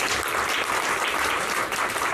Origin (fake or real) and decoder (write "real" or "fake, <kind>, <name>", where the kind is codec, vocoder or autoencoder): fake, vocoder, BigVGAN v2